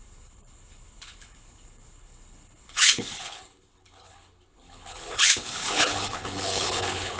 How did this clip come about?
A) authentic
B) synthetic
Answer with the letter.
B